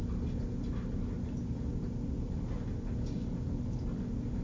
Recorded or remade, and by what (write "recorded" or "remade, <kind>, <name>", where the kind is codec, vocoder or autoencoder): recorded